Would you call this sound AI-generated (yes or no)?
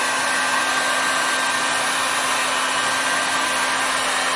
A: no